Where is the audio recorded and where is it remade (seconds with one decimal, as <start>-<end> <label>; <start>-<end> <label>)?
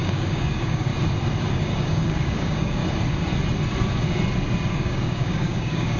0.0-0.9 remade; 0.9-1.5 recorded; 1.5-2.8 remade; 2.8-4.7 recorded; 4.7-6.0 remade